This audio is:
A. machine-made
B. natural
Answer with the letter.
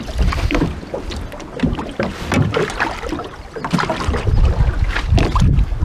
B